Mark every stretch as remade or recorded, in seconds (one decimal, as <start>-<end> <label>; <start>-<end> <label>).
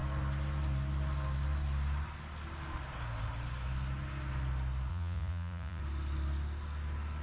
0.0-4.9 recorded; 4.9-5.8 remade; 5.8-7.2 recorded